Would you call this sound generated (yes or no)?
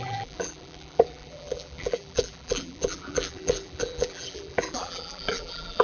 yes